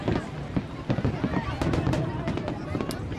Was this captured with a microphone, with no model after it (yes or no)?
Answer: yes